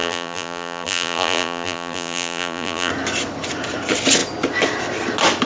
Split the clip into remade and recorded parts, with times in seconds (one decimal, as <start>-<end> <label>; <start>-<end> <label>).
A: 0.0-2.9 remade; 2.9-5.4 recorded